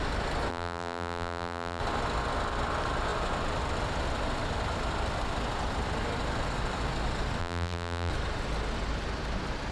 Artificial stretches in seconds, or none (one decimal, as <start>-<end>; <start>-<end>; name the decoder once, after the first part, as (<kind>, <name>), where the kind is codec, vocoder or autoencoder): 0.5-1.8 (vocoder, BigVGAN v2); 7.4-8.1